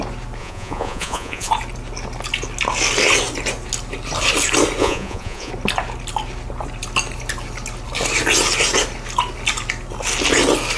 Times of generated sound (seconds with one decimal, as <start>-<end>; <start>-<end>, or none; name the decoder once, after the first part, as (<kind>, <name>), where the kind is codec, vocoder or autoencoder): 0.4-1.5 (vocoder, Vocos); 4.8-5.5